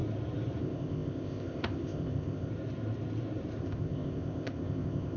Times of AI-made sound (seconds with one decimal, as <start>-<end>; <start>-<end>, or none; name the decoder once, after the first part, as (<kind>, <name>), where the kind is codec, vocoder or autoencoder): 0.6-2.5 (codec, ZipCodec); 3.6-5.2